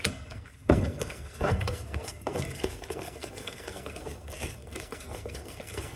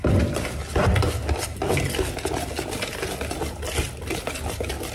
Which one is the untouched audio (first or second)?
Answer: second